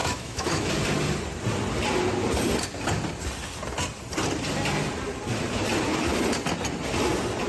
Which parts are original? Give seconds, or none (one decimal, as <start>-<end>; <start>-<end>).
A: 0.7-7.5

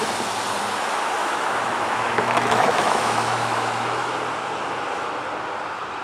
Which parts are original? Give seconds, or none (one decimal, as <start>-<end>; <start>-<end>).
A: 0.0-1.2; 4.1-6.0